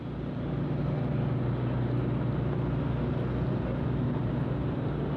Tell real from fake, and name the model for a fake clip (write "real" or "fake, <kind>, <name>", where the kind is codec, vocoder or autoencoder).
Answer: real